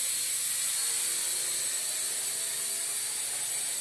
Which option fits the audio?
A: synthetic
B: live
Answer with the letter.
B